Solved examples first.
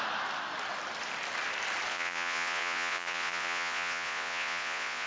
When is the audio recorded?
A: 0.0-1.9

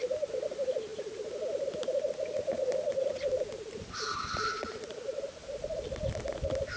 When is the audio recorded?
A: 0.0-6.8